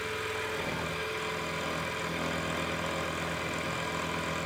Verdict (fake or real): real